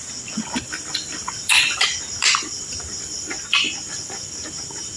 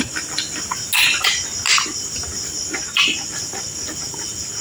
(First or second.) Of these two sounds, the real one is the second